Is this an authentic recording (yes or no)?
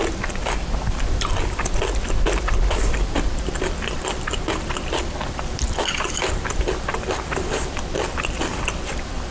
no